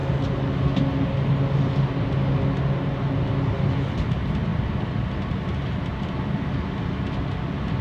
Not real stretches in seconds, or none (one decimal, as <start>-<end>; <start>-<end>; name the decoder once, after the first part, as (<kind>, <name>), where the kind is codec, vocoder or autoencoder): none